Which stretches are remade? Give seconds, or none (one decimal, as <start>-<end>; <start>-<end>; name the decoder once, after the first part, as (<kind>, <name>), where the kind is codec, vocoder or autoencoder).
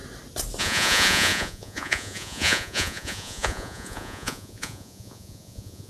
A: 0.6-5.9 (vocoder, Vocos)